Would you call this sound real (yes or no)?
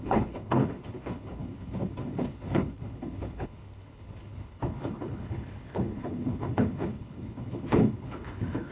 no